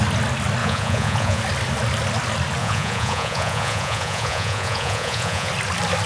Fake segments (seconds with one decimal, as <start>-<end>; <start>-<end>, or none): 0.6-1.4; 2.6-5.5